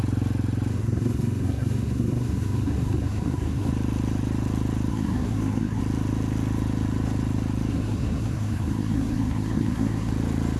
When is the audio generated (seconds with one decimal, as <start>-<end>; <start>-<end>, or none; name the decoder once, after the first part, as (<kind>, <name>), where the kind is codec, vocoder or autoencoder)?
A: 0.7-3.7 (codec, SNAC); 4.9-5.8; 7.7-10.1